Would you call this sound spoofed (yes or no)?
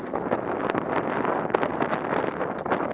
no